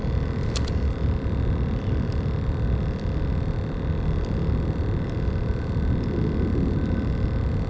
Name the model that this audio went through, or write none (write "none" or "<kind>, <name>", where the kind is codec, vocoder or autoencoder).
none